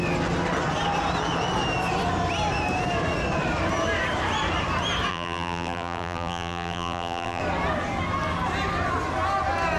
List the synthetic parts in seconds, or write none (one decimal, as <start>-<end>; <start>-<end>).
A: 5.1-7.4